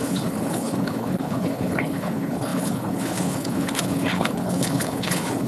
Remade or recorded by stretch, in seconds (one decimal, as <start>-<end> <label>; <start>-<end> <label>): 0.0-5.5 remade